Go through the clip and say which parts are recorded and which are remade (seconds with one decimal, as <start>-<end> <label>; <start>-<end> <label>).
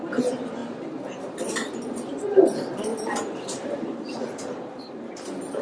0.0-0.6 recorded; 0.6-1.4 remade; 1.4-2.9 recorded; 2.9-5.1 remade; 5.1-5.6 recorded